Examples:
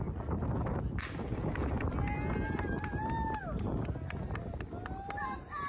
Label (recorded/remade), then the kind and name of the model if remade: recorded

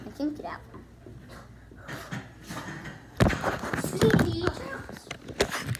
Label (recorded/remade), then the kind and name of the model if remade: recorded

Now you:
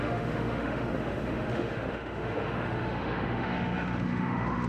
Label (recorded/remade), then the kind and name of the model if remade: remade, autoencoder, DAC-VAE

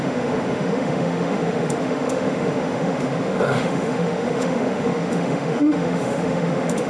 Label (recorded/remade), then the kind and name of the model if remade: remade, autoencoder, DAC-VAE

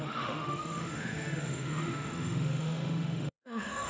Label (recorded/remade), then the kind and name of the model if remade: remade, autoencoder, DAC-VAE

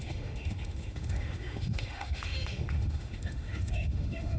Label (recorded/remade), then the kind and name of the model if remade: remade, autoencoder, DAC-VAE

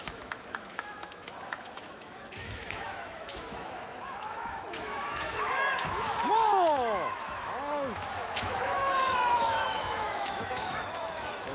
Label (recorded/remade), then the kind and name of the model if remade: remade, autoencoder, DAC-VAE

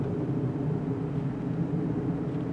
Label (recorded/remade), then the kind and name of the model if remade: recorded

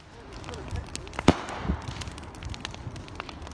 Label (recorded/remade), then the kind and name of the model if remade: recorded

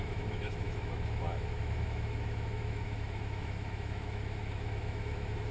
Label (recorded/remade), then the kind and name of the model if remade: remade, autoencoder, DAC-VAE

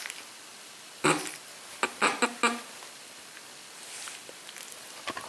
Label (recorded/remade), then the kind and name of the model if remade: recorded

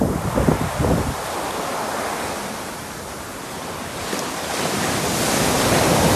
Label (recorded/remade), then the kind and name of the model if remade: recorded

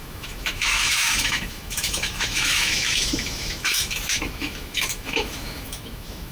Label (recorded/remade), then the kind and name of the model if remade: remade, autoencoder, DAC-VAE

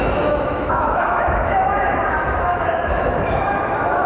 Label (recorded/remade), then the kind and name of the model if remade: remade, autoencoder, DAC-VAE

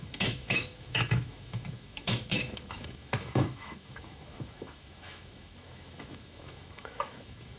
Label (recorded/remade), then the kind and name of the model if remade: remade, autoencoder, DAC-VAE